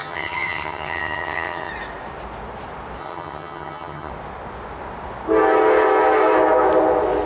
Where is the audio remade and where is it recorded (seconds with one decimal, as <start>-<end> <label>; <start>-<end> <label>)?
0.0-1.7 remade; 1.7-3.0 recorded; 3.0-4.1 remade; 4.1-7.3 recorded